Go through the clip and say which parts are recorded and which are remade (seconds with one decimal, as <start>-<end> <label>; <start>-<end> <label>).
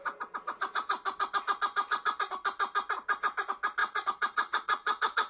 0.0-3.8 recorded; 3.8-5.3 remade